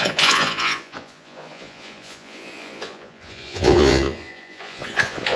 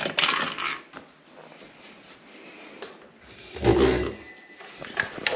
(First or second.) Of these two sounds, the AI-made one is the first